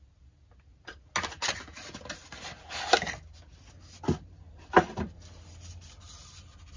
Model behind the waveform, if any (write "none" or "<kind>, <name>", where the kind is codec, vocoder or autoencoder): none